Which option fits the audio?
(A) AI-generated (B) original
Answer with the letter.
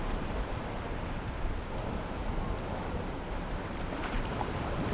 A